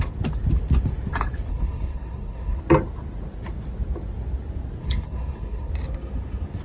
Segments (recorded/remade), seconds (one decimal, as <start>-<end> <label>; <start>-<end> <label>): 0.0-1.5 recorded; 1.5-2.6 remade; 2.6-4.8 recorded; 4.8-5.7 remade; 5.7-6.6 recorded

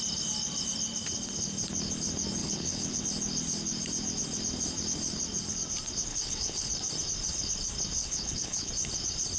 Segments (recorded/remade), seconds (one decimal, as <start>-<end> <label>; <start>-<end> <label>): 0.0-2.4 recorded; 2.4-3.0 remade; 3.0-6.1 recorded; 6.1-6.7 remade; 6.7-8.0 recorded; 8.0-8.7 remade; 8.7-9.4 recorded

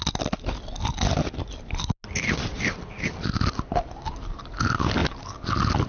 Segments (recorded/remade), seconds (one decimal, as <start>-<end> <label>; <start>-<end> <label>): 0.0-5.9 recorded

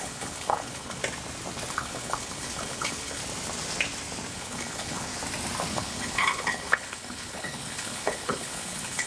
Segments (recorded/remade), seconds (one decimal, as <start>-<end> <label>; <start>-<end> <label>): 0.0-1.0 remade; 1.0-1.7 recorded; 1.7-3.2 remade; 3.2-4.3 recorded; 4.3-5.1 remade; 5.1-5.7 recorded; 5.7-9.1 remade

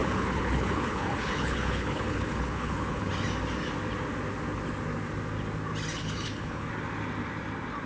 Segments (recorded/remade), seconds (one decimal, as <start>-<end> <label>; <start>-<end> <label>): 0.0-3.1 remade; 3.1-5.9 recorded; 5.9-6.7 remade; 6.7-7.9 recorded

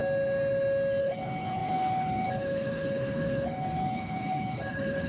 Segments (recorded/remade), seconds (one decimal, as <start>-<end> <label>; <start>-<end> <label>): 0.0-1.0 recorded; 1.0-5.1 remade

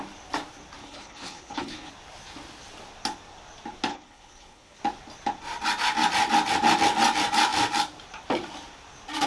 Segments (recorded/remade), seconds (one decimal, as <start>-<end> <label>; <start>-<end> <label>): 0.0-0.8 recorded; 0.8-1.9 remade; 1.9-3.9 recorded; 3.9-4.8 remade; 4.8-9.3 recorded